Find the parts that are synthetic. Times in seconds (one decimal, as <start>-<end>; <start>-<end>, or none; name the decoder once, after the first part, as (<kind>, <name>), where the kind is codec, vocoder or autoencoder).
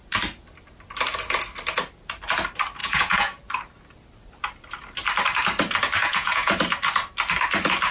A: 2.8-3.4 (vocoder, Vocos); 6.0-6.5